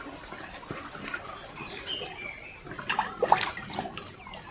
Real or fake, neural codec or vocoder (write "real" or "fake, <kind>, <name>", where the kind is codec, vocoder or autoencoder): real